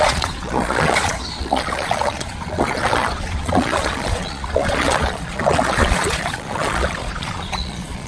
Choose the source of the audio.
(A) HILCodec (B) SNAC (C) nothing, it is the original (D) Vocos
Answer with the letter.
D